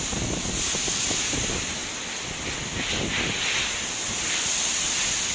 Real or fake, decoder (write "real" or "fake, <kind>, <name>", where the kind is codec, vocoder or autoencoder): real